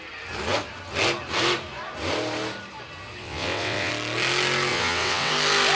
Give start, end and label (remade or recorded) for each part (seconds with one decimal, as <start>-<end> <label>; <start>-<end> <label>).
0.0-3.2 recorded; 3.2-3.9 remade; 3.9-4.7 recorded; 4.7-5.3 remade; 5.3-5.7 recorded